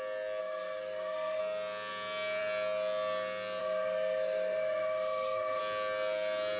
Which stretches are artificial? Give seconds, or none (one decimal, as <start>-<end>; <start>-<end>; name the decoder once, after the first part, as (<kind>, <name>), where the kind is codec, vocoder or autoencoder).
0.4-1.4 (codec, SNAC); 3.6-5.6